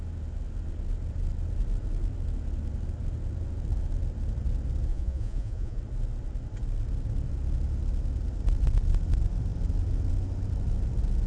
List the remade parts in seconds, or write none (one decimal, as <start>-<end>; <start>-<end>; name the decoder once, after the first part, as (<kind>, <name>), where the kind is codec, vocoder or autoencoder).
4.9-5.8 (vocoder, Vocos)